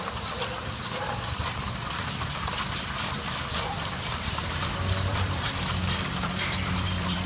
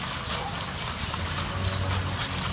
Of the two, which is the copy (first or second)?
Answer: first